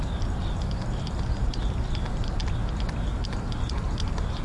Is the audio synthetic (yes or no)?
no